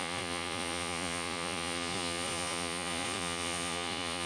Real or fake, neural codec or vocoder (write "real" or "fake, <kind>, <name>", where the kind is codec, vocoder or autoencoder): fake, vocoder, Vocos